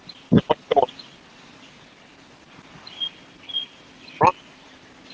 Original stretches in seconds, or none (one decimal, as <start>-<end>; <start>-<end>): 0.0-5.1